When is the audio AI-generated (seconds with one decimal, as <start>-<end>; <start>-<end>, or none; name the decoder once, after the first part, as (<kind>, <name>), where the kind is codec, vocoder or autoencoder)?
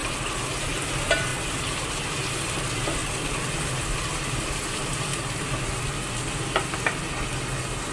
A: 1.3-1.9 (vocoder, BigVGAN v2); 3.0-3.7; 5.1-5.8